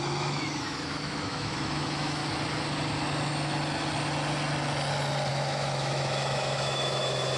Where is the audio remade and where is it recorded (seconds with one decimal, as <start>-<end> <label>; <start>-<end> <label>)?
0.0-2.2 remade; 2.2-5.3 recorded; 5.3-7.4 remade